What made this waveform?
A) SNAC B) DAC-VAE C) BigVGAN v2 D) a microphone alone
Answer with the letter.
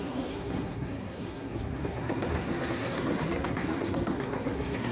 A